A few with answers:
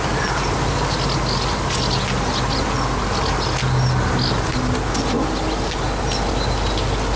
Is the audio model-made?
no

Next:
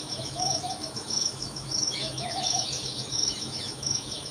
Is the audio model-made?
yes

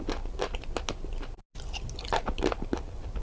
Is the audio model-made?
no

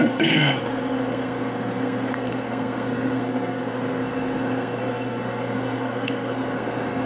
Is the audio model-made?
yes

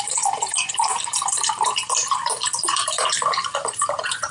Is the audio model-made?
yes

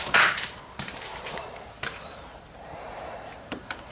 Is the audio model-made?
yes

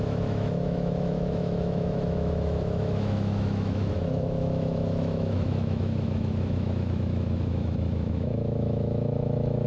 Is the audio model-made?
yes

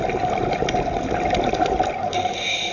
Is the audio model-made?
no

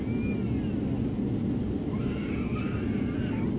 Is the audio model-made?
no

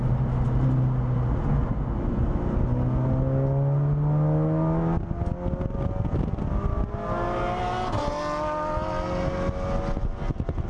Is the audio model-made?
no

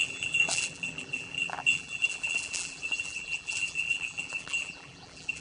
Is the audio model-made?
yes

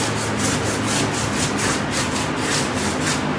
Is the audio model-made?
no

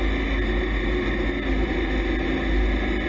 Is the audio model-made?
no